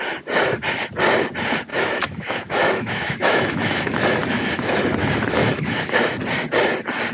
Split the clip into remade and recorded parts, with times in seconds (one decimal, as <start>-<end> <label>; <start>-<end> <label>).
0.0-1.7 recorded; 1.7-4.7 remade; 4.7-5.4 recorded; 5.4-6.2 remade; 6.2-7.1 recorded